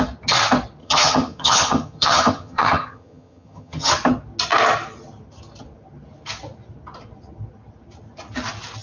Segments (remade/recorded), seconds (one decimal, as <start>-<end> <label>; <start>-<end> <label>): 0.0-0.8 recorded; 0.8-3.9 remade; 3.9-8.8 recorded